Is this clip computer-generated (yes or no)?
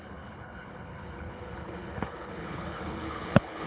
yes